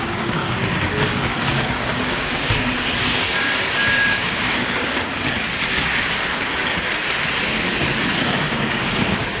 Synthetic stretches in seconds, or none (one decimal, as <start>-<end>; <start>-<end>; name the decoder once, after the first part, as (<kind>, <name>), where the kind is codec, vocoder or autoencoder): 0.0-0.4 (codec, DAC); 0.9-4.8; 5.4-5.9; 8.2-9.4

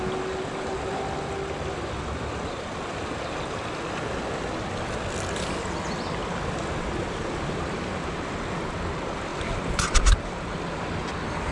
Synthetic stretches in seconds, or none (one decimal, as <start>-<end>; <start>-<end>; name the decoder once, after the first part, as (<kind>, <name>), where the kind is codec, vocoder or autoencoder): 6.2-8.1 (vocoder, BigVGAN v2); 9.3-10.5